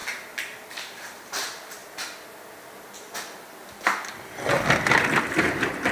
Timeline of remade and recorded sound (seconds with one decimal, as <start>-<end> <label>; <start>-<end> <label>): 0.0-0.7 recorded; 0.7-1.8 remade; 1.8-4.6 recorded; 4.6-5.9 remade